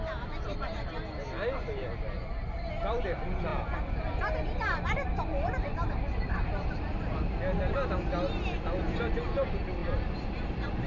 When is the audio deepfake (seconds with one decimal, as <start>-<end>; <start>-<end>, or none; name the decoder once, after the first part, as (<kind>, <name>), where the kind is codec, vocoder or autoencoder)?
none